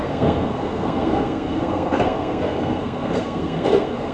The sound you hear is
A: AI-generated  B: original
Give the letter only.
A